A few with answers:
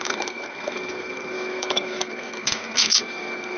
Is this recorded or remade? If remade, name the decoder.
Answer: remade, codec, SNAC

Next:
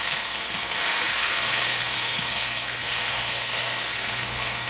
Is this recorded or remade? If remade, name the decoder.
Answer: remade, codec, SNAC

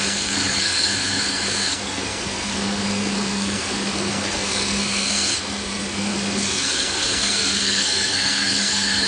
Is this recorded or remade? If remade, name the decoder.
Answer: remade, codec, SNAC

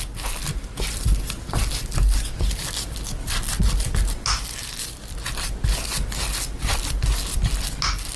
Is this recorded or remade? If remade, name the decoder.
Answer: recorded